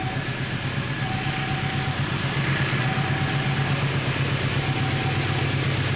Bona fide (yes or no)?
yes